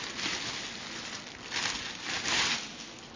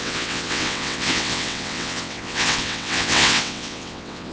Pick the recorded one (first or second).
first